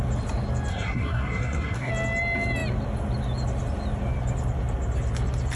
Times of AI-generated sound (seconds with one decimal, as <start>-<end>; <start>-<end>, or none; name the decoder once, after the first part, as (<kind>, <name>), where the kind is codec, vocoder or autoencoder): 0.7-1.9 (codec, SNAC)